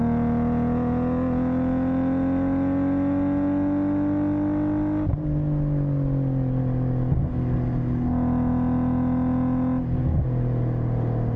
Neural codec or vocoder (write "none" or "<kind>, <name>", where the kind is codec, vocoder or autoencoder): none